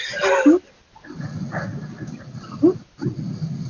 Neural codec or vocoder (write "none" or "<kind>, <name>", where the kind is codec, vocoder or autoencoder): none